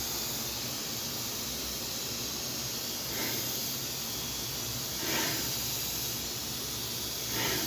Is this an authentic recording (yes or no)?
yes